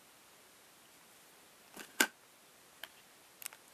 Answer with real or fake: real